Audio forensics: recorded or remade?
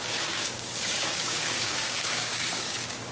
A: remade